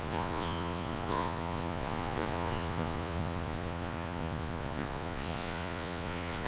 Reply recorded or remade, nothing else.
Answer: remade